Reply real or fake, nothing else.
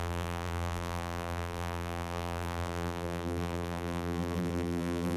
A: fake